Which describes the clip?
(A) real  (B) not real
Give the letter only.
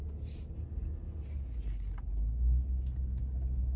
A